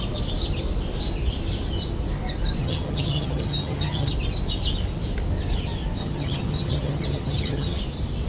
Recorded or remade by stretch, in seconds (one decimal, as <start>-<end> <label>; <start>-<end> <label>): 0.0-2.6 recorded; 2.6-4.1 remade; 4.1-6.0 recorded; 6.0-7.8 remade; 7.8-8.3 recorded

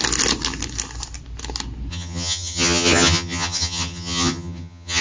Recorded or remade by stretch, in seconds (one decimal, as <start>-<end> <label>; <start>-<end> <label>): 0.0-1.9 recorded; 1.9-5.0 remade

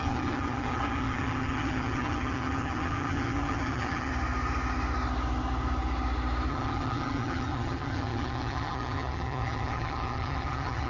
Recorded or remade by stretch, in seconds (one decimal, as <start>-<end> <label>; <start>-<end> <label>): 0.0-4.1 remade; 4.1-6.5 recorded; 6.5-10.9 remade

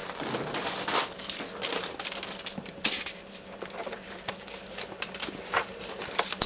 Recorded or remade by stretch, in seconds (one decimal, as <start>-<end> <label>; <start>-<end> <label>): 0.0-6.5 recorded

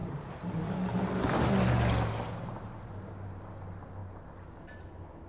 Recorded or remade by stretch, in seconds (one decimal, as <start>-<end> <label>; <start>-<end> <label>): 0.0-5.3 recorded

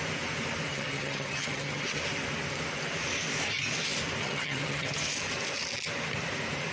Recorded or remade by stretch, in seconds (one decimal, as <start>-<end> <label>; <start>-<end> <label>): 0.0-0.7 recorded; 0.7-2.0 remade; 2.0-4.2 recorded; 4.2-5.1 remade; 5.1-6.7 recorded

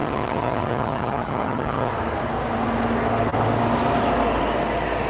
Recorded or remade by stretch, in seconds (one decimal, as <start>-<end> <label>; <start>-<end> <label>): 0.0-1.9 remade; 1.9-5.1 recorded

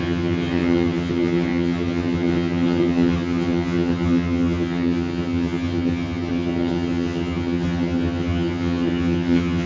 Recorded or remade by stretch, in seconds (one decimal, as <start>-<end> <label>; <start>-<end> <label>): 0.0-9.7 remade